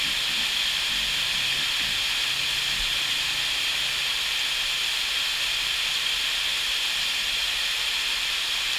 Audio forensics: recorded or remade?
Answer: recorded